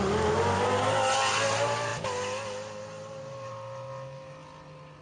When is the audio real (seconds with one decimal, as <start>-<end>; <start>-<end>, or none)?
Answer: 0.0-5.0